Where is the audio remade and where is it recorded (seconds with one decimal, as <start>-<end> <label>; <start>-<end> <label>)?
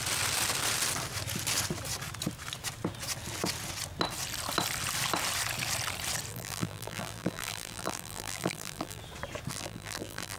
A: 0.0-6.3 recorded; 6.3-9.0 remade; 9.0-9.5 recorded; 9.5-10.4 remade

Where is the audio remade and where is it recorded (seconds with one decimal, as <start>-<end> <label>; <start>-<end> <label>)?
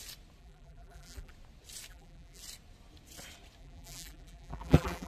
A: 0.0-0.4 recorded; 0.4-1.3 remade; 1.3-1.9 recorded; 1.9-2.4 remade; 2.4-3.6 recorded; 3.6-5.1 remade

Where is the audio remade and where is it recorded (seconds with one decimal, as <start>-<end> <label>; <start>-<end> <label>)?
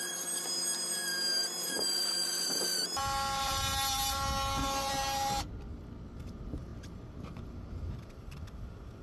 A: 0.0-3.0 remade; 3.0-6.2 recorded; 6.2-9.0 remade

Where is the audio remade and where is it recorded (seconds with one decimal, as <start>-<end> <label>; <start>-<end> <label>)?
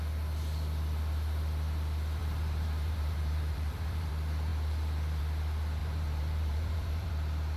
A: 0.0-2.2 recorded; 2.2-4.1 remade; 4.1-5.8 recorded; 5.8-7.1 remade; 7.1-7.6 recorded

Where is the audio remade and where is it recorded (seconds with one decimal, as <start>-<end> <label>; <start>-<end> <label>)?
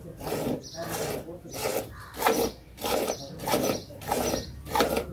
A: 0.0-5.1 remade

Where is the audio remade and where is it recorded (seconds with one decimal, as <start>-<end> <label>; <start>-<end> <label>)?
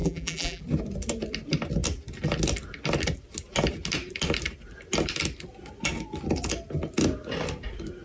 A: 0.0-0.6 remade; 0.6-8.0 recorded